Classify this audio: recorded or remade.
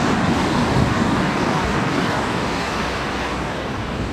remade